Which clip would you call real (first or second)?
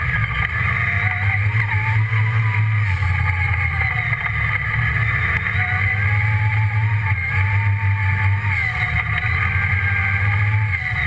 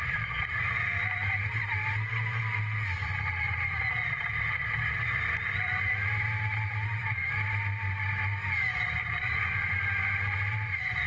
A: first